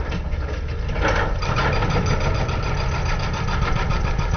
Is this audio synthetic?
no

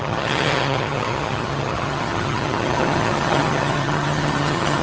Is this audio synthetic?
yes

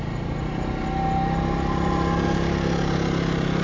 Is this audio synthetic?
no